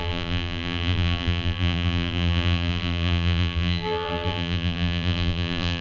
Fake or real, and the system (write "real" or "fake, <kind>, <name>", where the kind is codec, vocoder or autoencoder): fake, vocoder, BigVGAN v2